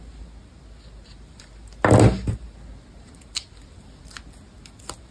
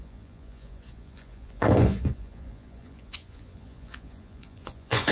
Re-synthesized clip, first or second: second